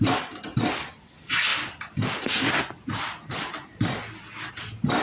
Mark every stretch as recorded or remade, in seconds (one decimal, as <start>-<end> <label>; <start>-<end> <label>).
0.0-5.0 recorded